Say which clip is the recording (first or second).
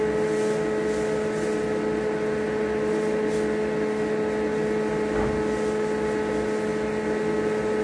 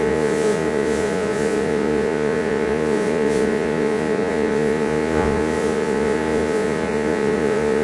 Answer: first